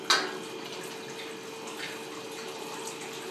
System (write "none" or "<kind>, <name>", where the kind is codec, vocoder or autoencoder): none